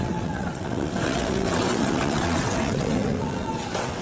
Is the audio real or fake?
fake